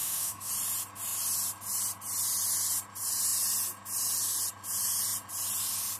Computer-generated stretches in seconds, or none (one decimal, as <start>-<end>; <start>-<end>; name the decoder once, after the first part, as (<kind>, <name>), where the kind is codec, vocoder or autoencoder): 0.0-0.5 (autoencoder, DAC-VAE)